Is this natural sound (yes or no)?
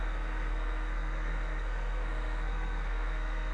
no